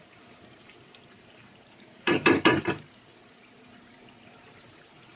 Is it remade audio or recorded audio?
remade